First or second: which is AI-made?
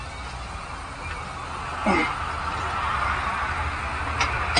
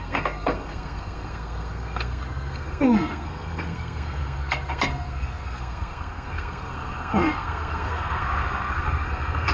second